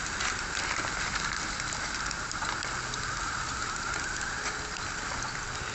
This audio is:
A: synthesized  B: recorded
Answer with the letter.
B